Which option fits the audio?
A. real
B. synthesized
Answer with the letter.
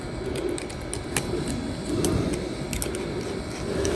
A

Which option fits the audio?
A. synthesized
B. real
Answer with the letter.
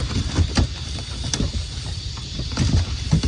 B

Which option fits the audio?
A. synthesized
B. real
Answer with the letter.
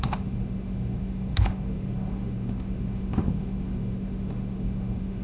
A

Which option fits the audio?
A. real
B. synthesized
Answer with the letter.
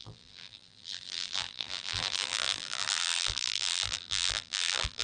B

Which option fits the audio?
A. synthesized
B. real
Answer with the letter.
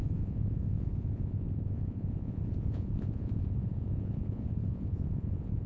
A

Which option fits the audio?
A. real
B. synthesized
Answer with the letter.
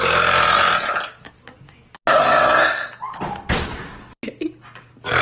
A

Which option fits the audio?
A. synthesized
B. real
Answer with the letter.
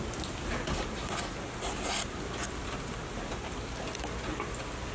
B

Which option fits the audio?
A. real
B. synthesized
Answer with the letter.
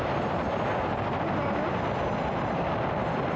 A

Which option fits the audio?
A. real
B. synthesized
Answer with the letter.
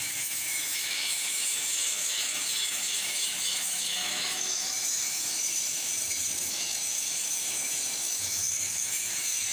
B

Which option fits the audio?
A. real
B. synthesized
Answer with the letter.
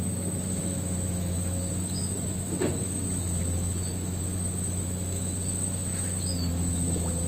B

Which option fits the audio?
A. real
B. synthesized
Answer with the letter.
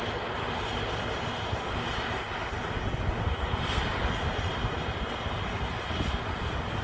A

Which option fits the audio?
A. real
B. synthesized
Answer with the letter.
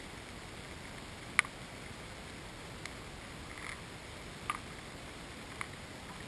A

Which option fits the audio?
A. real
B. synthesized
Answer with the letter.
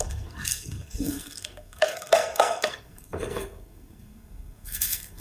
B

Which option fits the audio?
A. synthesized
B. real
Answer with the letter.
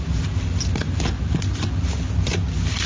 B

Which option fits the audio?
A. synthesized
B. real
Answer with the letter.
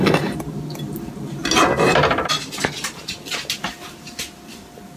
B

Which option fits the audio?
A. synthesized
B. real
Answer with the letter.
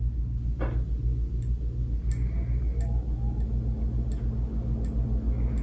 B